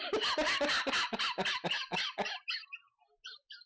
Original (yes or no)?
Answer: yes